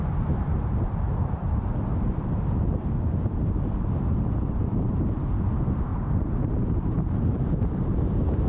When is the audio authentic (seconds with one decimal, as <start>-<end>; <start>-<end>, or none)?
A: 1.9-4.5